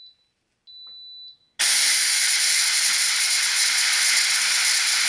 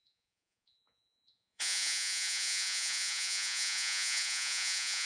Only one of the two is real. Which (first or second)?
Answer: first